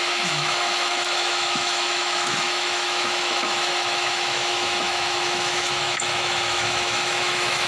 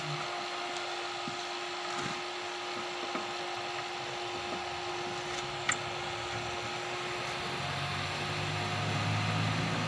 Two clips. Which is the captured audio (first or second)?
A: second